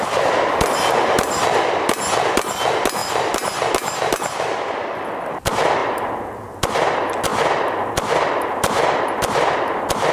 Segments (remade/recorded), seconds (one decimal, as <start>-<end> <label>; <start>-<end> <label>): 0.0-3.0 recorded; 3.0-3.7 remade; 3.7-10.1 recorded